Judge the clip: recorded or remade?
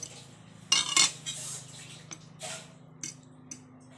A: recorded